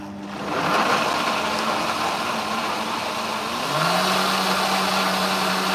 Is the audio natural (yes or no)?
yes